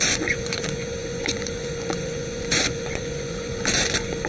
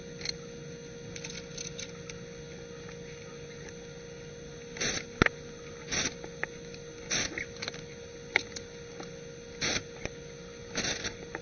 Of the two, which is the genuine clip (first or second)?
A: second